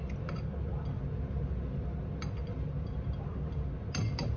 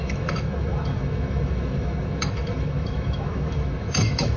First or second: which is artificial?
second